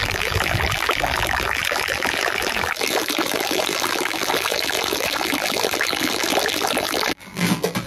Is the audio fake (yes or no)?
yes